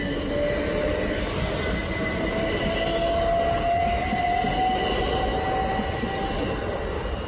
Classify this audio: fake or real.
real